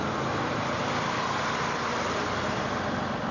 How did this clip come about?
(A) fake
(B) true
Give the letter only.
B